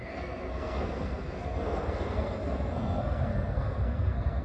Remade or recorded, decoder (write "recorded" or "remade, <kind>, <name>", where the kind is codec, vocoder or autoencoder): remade, codec, SNAC